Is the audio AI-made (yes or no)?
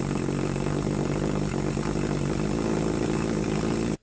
no